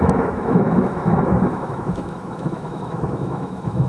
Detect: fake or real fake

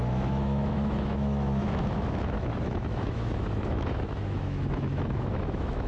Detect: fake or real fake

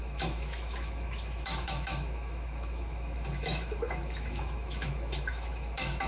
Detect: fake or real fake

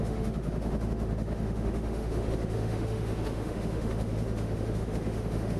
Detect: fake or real fake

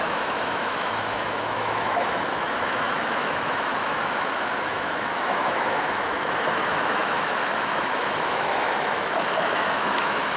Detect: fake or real fake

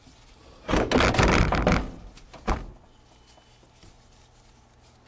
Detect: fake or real real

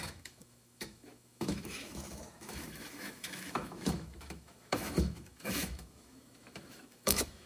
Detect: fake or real fake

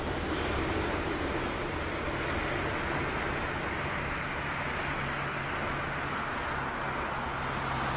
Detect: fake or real real